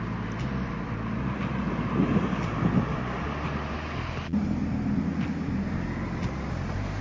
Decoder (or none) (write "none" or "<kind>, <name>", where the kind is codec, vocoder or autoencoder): none